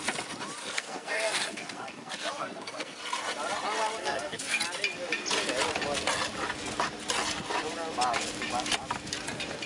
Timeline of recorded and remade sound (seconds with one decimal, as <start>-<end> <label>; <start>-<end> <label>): 0.0-0.6 recorded; 0.6-3.0 remade; 3.0-4.0 recorded; 4.0-4.6 remade; 4.6-9.7 recorded